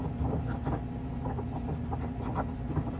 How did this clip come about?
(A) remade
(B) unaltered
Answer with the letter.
B